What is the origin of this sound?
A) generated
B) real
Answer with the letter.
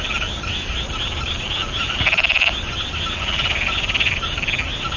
B